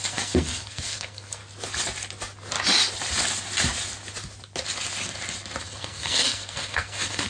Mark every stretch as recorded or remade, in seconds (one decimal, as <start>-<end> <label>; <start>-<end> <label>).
0.0-1.4 remade; 1.4-5.6 recorded; 5.6-7.3 remade